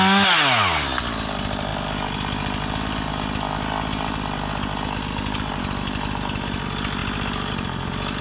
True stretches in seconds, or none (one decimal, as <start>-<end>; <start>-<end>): 0.0-8.2